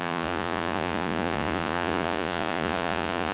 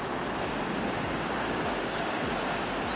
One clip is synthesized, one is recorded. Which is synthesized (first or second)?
first